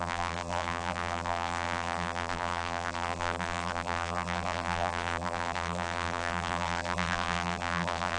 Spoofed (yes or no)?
yes